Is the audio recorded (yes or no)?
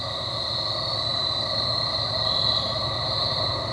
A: yes